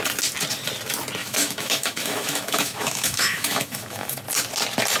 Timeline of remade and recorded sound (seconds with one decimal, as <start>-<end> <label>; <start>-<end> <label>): 0.0-1.2 recorded; 1.2-4.2 remade; 4.2-5.0 recorded